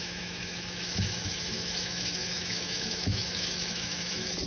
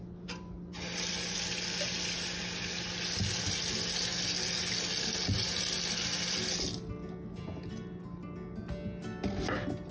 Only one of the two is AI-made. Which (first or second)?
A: first